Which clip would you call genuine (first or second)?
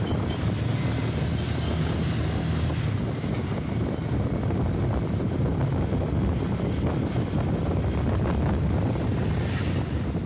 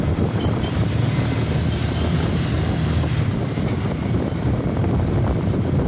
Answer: first